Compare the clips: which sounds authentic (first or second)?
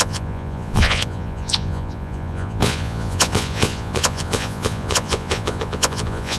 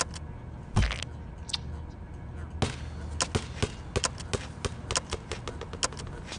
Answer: second